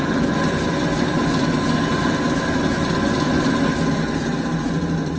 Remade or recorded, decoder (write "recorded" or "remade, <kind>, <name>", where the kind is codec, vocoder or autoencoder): recorded